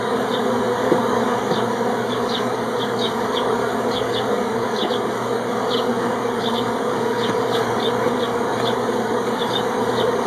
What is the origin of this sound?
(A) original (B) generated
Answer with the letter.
B